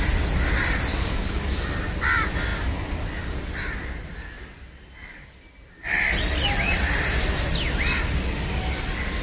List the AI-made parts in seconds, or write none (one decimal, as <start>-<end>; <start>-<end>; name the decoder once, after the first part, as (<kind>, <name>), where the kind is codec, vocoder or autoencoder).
0.9-1.4 (codec, DAC)

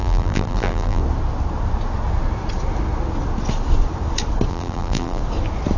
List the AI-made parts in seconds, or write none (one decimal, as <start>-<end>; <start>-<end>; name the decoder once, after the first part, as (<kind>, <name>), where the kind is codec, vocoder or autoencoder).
0.0-1.0 (vocoder, BigVGAN v2); 4.5-5.2

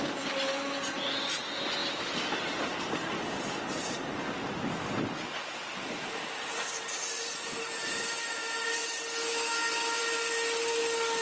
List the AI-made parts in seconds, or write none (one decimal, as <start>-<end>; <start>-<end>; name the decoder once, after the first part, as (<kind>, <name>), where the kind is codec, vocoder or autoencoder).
5.4-7.8 (vocoder, BigVGAN v2)

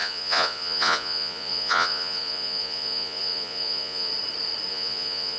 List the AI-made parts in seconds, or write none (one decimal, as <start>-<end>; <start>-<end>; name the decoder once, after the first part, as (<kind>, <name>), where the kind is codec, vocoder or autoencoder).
0.0-4.1 (vocoder, Vocos); 4.7-5.4

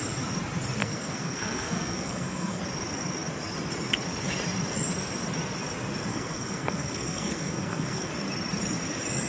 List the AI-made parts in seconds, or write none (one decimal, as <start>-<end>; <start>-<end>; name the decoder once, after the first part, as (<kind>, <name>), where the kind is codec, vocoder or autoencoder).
0.8-2.6 (codec, SNAC); 6.1-8.1

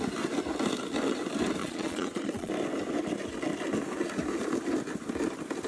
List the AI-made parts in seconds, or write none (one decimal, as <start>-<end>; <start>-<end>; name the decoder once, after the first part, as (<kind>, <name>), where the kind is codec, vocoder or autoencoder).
1.6-2.5 (vocoder, Vocos)